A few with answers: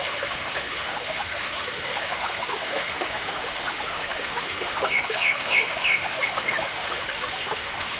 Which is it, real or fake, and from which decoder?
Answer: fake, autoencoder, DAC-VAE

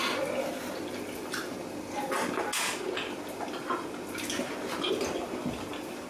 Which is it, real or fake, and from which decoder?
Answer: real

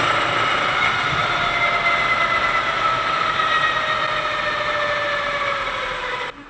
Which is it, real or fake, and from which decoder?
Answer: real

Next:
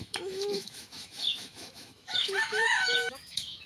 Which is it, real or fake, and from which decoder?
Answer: fake, autoencoder, DAC-VAE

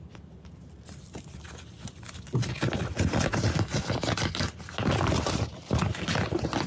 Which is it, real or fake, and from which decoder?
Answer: real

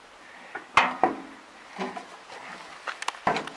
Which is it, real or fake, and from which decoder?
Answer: real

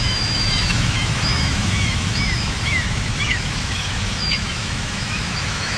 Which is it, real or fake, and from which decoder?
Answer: fake, autoencoder, DAC-VAE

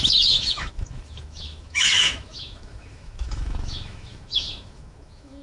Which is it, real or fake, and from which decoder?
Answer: fake, autoencoder, DAC-VAE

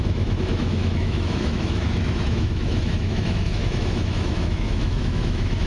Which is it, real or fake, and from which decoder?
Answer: fake, autoencoder, DAC-VAE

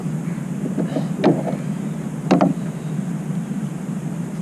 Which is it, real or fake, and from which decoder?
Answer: real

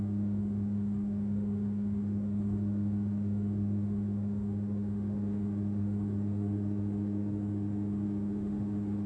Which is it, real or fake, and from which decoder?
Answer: fake, autoencoder, DAC-VAE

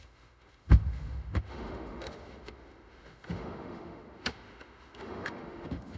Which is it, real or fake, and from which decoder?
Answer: fake, autoencoder, DAC-VAE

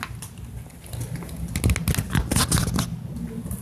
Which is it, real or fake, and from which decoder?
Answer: real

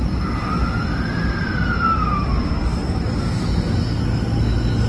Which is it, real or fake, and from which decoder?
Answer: real